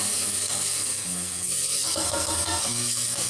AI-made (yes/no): yes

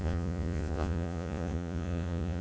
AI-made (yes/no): yes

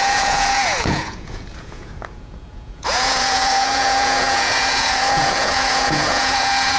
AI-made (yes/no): yes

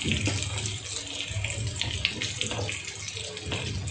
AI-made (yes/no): no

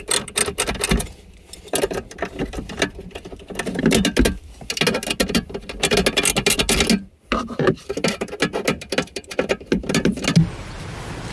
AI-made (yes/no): no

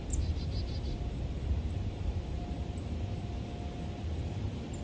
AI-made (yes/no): no